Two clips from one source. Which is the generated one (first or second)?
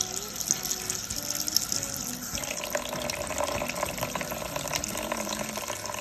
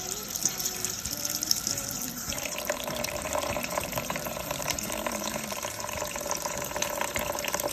second